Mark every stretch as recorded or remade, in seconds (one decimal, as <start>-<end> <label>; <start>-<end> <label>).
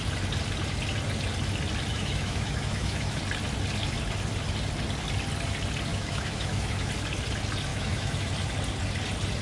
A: 0.0-1.9 recorded; 1.9-3.2 remade; 3.2-5.9 recorded; 5.9-6.9 remade; 6.9-7.7 recorded; 7.7-8.3 remade; 8.3-9.4 recorded